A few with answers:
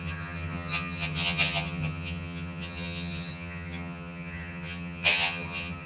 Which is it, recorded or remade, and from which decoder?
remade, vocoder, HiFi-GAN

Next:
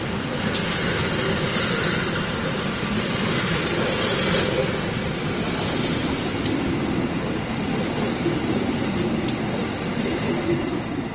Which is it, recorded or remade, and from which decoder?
recorded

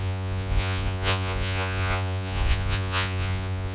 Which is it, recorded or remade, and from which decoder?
remade, vocoder, Vocos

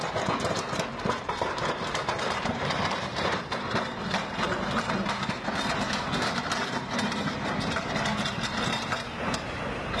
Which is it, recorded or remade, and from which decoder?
remade, vocoder, BigVGAN v2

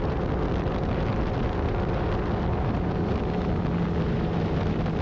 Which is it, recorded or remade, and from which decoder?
recorded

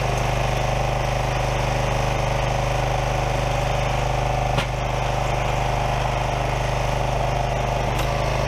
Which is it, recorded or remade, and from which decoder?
recorded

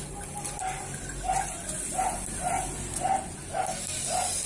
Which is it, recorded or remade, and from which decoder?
recorded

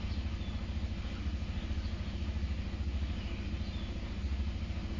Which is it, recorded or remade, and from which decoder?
recorded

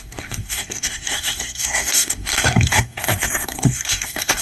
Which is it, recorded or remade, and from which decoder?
remade, codec, SNAC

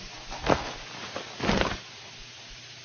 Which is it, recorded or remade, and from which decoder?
recorded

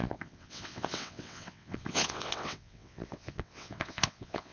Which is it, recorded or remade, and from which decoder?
remade, vocoder, WaveNeXt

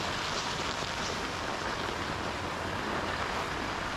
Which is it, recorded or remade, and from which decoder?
recorded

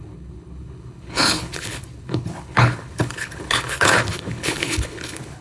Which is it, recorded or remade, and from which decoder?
remade, codec, HILCodec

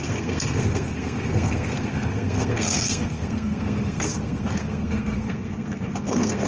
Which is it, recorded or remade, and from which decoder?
remade, codec, SNAC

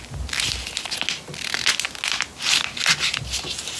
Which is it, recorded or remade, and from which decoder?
recorded